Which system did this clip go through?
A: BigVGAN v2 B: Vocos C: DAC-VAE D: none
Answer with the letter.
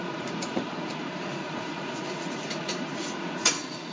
B